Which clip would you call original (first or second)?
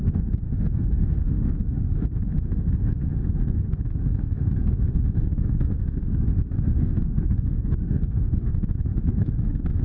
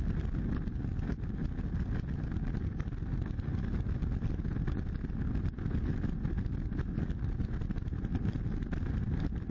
second